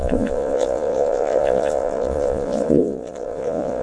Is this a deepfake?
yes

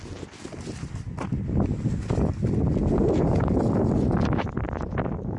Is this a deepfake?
no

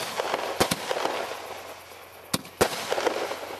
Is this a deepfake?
no